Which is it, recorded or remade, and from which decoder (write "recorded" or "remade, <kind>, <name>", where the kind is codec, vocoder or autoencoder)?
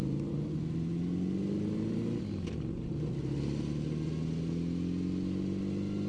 recorded